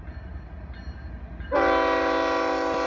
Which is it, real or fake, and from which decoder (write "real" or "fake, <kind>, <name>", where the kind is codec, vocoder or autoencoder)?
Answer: real